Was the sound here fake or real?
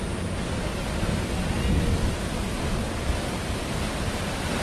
real